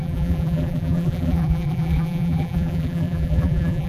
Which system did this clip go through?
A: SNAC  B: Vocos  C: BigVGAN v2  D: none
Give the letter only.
C